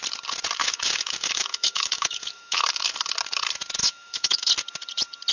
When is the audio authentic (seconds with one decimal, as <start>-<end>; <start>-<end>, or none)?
0.0-0.6; 2.9-3.8; 4.5-5.3